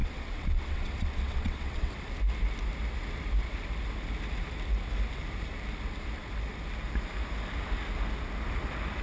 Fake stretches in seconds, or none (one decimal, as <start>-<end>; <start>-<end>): 0.0-1.9